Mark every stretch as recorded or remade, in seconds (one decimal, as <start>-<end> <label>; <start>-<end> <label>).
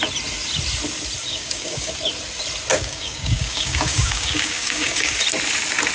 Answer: 0.0-1.3 recorded; 1.3-1.9 remade; 1.9-2.7 recorded; 2.7-5.1 remade; 5.1-5.9 recorded